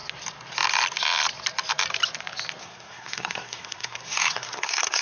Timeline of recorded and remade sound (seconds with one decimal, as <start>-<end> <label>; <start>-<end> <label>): 0.0-2.6 recorded; 2.6-5.0 remade